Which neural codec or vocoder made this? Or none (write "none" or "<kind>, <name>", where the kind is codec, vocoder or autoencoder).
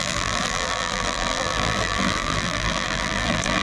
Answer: vocoder, BigVGAN v2